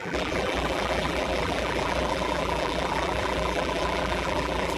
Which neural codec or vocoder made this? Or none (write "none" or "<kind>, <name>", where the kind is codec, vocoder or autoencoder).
vocoder, BigVGAN v2